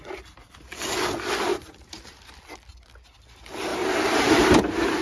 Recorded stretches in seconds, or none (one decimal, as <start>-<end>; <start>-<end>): 0.0-1.5; 2.4-3.7; 4.6-5.0